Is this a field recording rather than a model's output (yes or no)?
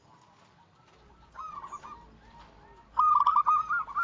yes